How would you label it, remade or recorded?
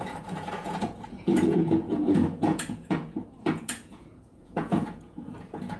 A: remade